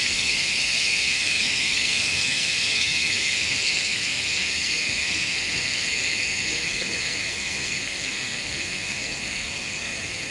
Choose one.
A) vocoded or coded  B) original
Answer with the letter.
A